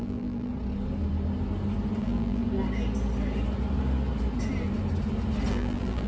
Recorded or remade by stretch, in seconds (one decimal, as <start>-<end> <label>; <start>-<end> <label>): 0.0-0.5 remade; 0.5-2.0 recorded; 2.0-2.4 remade; 2.4-5.5 recorded; 5.5-6.1 remade